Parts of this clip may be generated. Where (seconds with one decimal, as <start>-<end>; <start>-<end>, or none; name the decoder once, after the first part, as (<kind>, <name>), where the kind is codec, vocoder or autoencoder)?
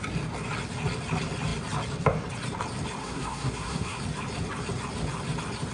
3.0-4.0 (codec, SNAC)